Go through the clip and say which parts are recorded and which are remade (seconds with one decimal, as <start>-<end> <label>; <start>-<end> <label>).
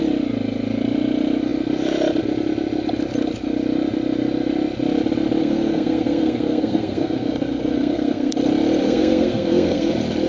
0.0-5.4 recorded; 5.4-8.3 remade; 8.3-8.8 recorded; 8.8-9.9 remade; 9.9-10.3 recorded